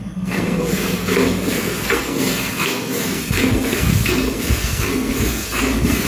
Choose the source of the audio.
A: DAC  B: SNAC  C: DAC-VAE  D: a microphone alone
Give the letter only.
B